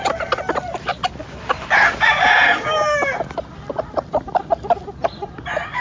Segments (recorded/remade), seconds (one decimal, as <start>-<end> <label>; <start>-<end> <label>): 0.0-5.8 recorded